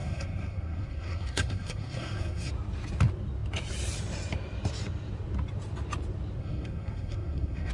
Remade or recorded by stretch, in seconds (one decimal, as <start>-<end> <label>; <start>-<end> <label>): 0.0-2.5 remade; 2.5-6.4 recorded; 6.4-7.7 remade